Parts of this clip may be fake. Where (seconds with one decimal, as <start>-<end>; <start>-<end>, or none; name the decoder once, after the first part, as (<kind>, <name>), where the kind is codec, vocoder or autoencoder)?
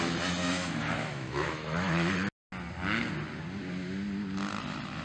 0.4-2.1 (autoencoder, DAC-VAE)